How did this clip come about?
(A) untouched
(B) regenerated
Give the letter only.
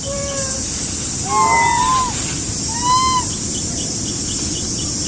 A